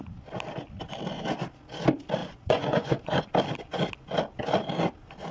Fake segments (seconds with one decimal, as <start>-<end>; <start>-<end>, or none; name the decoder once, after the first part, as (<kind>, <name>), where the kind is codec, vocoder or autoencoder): 2.2-3.2 (vocoder, Vocos)